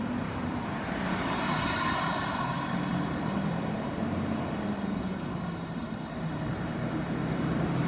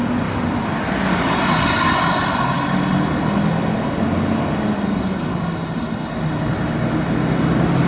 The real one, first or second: second